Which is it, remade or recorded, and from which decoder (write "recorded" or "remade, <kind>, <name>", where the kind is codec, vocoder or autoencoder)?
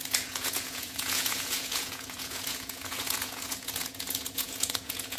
remade, vocoder, Vocos